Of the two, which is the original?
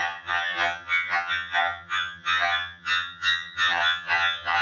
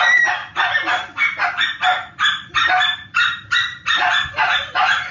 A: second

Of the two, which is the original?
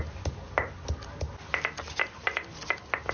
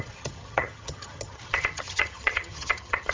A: first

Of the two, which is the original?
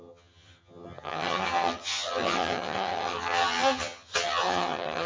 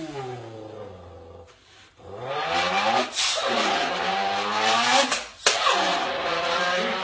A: second